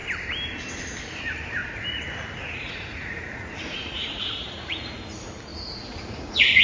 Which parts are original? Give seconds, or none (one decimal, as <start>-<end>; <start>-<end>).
0.0-1.6; 5.0-5.5